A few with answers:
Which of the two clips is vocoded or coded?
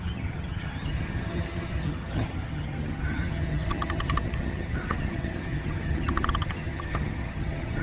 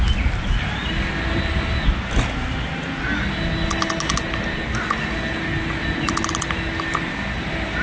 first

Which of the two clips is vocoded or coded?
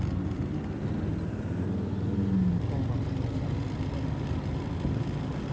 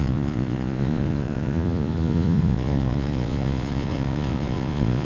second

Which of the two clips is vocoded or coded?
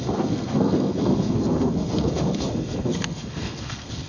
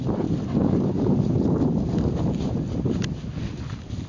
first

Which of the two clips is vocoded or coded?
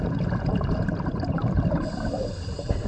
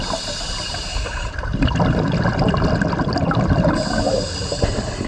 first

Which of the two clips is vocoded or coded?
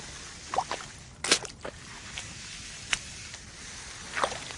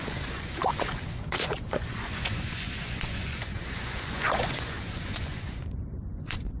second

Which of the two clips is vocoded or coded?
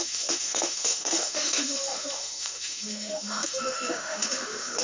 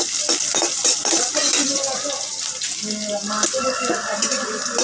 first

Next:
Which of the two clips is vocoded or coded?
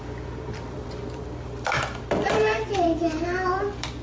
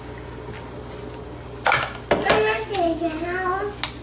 first